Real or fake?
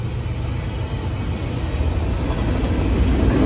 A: real